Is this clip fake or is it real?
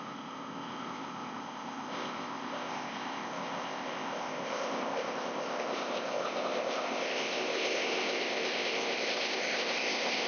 fake